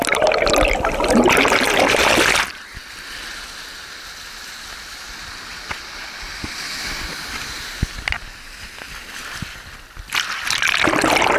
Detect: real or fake real